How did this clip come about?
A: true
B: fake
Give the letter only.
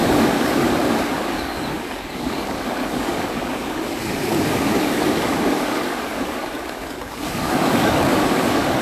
B